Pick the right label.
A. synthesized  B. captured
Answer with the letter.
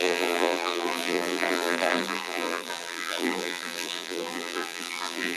A